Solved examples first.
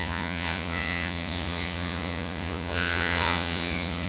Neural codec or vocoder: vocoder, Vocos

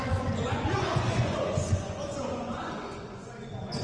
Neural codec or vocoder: vocoder, Vocos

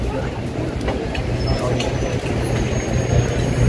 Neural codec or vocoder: none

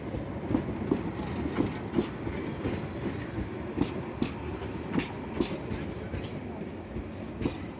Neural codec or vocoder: none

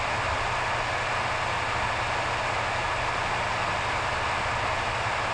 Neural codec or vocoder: none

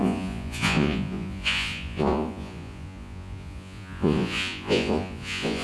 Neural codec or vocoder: vocoder, Vocos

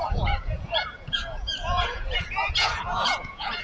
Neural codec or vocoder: vocoder, Vocos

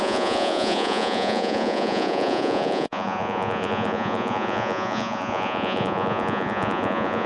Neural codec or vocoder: vocoder, Vocos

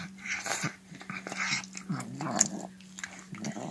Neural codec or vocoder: none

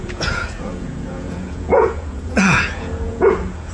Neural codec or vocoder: vocoder, Vocos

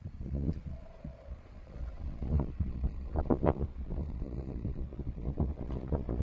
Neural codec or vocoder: vocoder, Vocos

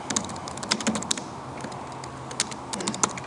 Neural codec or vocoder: none